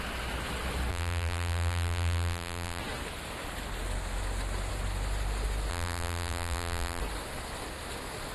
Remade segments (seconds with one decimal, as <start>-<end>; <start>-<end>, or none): 0.9-2.8; 5.7-7.0